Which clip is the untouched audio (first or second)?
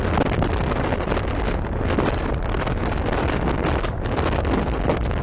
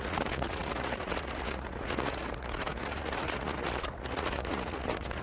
first